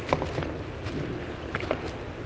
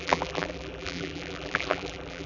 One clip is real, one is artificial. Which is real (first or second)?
first